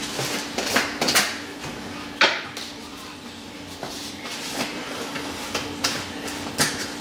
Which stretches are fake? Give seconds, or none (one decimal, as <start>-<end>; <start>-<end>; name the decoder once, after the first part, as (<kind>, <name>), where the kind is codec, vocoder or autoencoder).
2.9-4.9 (vocoder, BigVGAN v2)